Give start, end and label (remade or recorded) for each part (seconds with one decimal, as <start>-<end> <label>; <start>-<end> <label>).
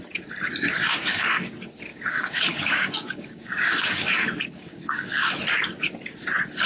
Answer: 0.0-0.8 recorded; 0.8-1.5 remade; 1.5-1.9 recorded; 1.9-5.3 remade; 5.3-6.7 recorded